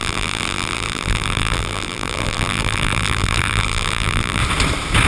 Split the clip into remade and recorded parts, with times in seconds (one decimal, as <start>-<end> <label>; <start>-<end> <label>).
0.0-4.4 remade; 4.4-5.1 recorded